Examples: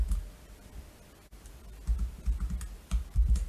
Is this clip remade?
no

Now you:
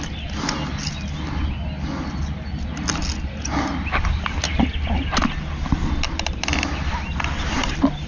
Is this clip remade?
no